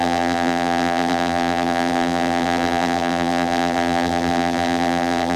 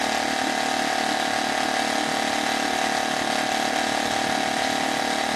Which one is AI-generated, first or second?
first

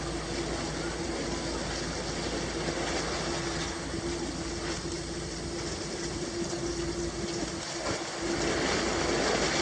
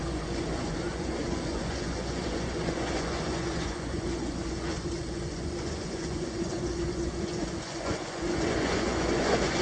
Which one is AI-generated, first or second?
second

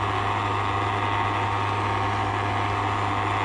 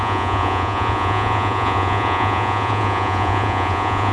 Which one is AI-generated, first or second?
second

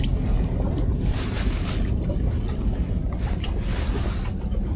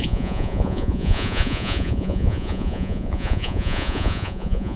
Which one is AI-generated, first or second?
second